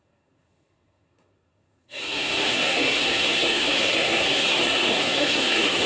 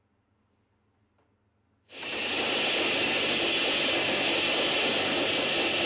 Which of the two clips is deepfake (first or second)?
first